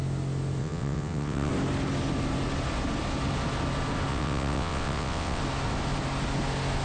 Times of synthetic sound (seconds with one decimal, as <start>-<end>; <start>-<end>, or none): 0.6-1.5; 4.1-5.4